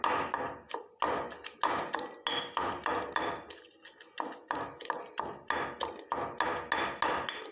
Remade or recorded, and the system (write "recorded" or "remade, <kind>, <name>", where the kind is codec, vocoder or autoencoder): recorded